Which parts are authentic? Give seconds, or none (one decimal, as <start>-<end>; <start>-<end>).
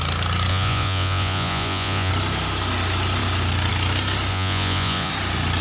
0.0-0.5; 2.1-4.3; 5.1-5.6